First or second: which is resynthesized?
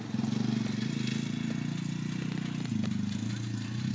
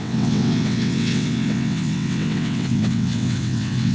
second